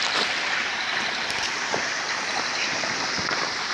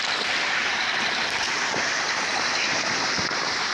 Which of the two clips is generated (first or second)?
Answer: first